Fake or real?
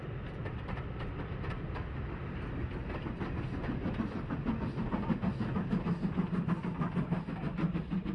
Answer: real